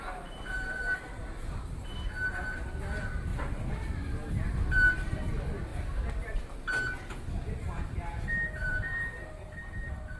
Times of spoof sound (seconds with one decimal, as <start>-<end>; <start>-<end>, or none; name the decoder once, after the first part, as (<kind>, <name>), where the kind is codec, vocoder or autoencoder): 3.3-4.9 (vocoder, BigVGAN v2); 8.6-9.5